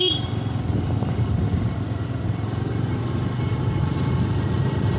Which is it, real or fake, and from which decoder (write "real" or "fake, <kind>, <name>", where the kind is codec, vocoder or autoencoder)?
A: real